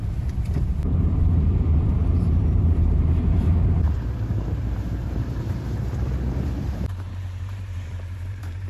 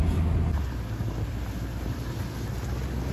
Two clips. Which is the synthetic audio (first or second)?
first